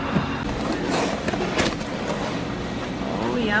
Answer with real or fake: real